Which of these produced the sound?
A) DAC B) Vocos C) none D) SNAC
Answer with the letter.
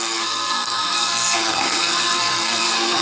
D